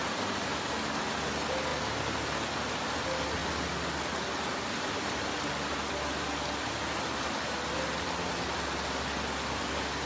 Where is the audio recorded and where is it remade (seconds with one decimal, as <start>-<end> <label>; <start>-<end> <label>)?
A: 0.0-10.1 recorded